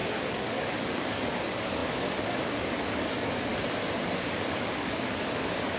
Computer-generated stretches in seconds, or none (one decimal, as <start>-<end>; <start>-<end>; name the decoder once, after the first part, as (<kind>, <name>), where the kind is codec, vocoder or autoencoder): 0.0-3.5 (codec, DAC); 4.3-5.8